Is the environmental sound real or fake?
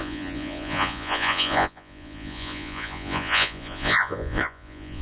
fake